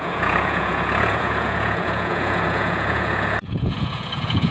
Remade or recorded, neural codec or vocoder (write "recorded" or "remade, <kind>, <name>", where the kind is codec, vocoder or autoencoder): remade, vocoder, Vocos